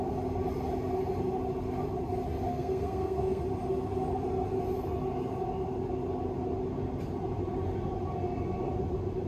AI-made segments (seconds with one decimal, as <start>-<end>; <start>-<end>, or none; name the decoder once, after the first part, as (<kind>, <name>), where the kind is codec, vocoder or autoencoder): 2.5-3.4 (codec, SNAC)